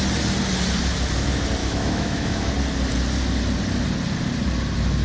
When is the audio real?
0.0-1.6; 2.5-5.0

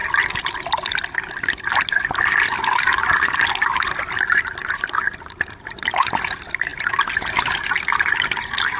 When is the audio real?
0.0-8.8